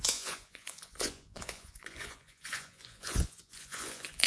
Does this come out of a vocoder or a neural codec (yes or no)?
yes